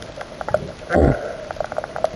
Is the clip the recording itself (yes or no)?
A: yes